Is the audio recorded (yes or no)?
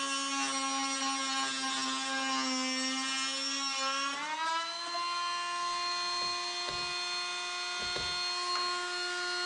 yes